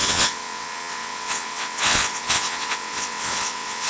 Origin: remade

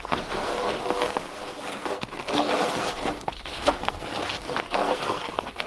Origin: remade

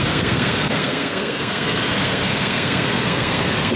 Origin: remade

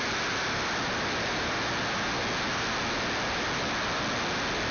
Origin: recorded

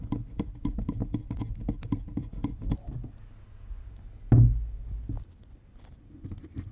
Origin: recorded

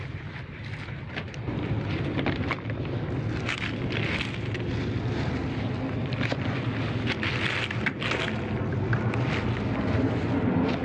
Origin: recorded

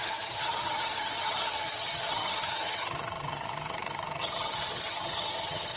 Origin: remade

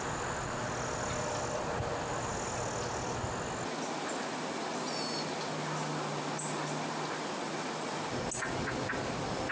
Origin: recorded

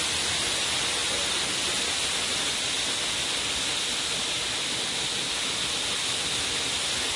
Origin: recorded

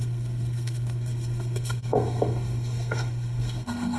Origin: remade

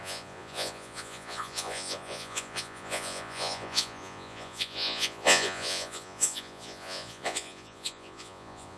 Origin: remade